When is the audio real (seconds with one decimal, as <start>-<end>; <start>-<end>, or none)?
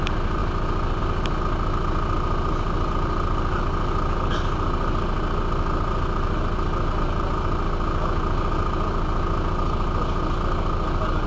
0.0-11.3